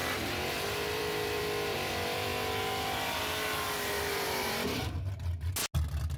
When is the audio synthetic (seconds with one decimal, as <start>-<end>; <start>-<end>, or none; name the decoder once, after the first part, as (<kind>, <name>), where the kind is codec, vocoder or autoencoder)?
0.0-2.3 (vocoder, BigVGAN v2); 4.1-5.3